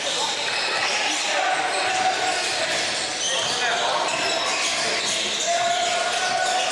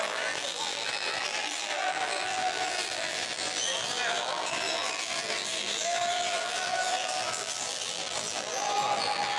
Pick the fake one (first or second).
second